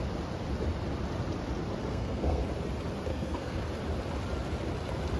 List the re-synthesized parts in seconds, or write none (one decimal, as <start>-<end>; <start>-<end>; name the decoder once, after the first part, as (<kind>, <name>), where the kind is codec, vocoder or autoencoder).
1.9-2.4 (codec, SNAC); 3.1-3.6